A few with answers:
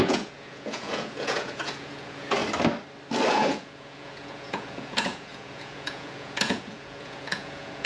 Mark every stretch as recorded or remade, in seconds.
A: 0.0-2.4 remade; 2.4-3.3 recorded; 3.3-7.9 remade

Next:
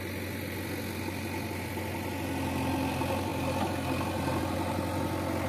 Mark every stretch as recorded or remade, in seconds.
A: 0.0-5.5 recorded

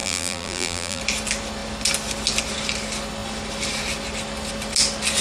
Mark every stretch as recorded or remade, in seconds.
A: 0.0-1.0 remade; 1.0-5.2 recorded

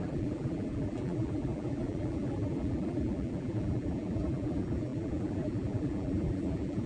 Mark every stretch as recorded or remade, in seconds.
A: 0.0-6.9 remade

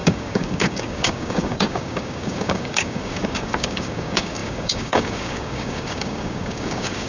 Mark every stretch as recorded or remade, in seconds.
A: 0.0-7.1 remade

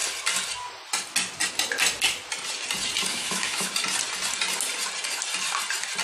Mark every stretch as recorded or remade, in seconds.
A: 0.0-3.1 recorded; 3.1-3.7 remade; 3.7-6.0 recorded